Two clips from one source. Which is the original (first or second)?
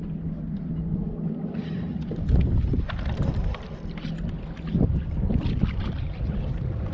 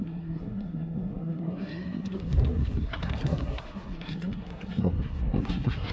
first